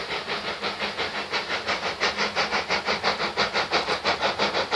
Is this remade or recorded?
recorded